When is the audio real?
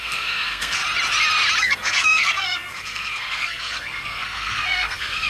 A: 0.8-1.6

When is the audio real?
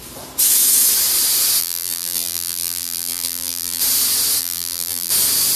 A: 0.0-1.6; 3.8-4.4; 5.1-5.6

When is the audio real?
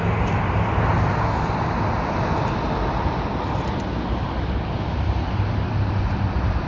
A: 0.9-4.9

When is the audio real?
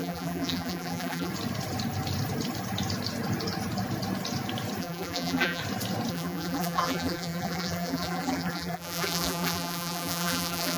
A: 1.3-4.8; 5.6-6.1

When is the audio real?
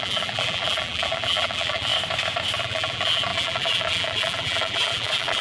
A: 1.9-2.6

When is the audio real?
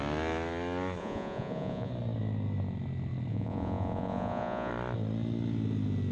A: 0.0-1.0; 1.9-3.3; 4.7-6.1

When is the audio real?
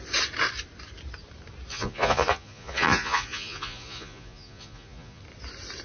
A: 0.0-1.7; 5.2-5.8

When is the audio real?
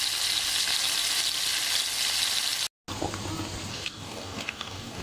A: 0.0-3.7